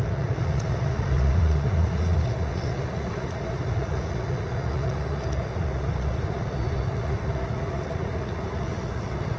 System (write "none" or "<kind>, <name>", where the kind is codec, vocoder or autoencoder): vocoder, Vocos